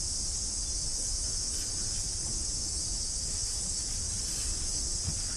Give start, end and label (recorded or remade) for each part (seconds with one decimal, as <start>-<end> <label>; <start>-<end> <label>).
0.0-0.9 recorded; 0.9-1.5 remade; 1.5-2.6 recorded; 2.6-3.6 remade; 3.6-5.4 recorded